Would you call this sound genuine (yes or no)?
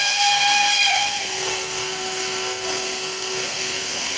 no